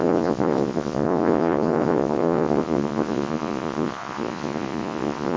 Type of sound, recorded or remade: remade